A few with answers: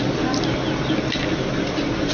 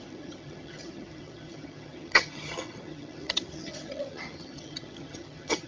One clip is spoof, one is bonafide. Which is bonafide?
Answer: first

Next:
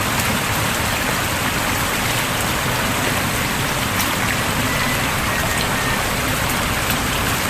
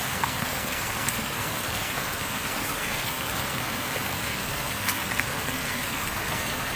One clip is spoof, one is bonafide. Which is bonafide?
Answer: first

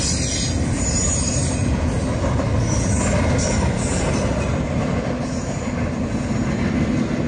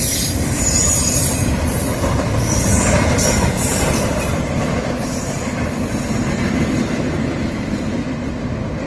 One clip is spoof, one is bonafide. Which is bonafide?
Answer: first